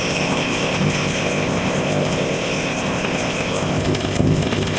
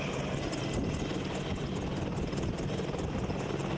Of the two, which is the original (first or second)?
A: second